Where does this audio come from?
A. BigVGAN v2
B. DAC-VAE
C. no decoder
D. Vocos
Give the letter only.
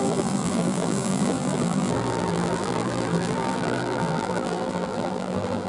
A